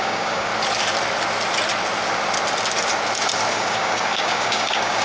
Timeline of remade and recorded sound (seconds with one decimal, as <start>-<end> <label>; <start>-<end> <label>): 0.0-0.5 remade; 0.5-3.5 recorded; 3.5-5.0 remade

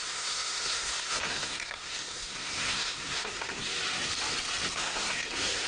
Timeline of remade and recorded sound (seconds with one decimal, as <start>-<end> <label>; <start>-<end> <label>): 0.0-3.7 remade; 3.7-4.7 recorded; 4.7-5.7 remade

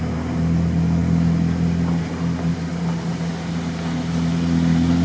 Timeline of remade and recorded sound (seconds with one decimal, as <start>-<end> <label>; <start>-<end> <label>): 0.0-5.0 recorded

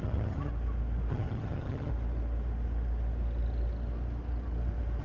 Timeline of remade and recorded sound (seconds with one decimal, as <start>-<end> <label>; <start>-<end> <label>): 0.0-0.5 remade; 0.5-1.1 recorded; 1.1-1.9 remade; 1.9-5.0 recorded

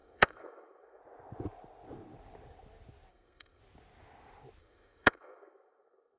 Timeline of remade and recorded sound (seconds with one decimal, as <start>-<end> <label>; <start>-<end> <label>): 0.0-1.0 remade; 1.0-3.1 recorded; 3.1-3.6 remade; 3.6-4.6 recorded; 4.6-6.2 remade

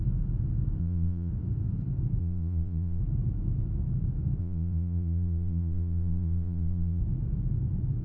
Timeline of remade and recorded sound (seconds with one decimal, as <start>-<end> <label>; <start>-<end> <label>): 0.0-0.8 recorded; 0.8-1.3 remade; 1.3-2.2 recorded; 2.2-3.0 remade; 3.0-4.4 recorded; 4.4-7.0 remade; 7.0-8.0 recorded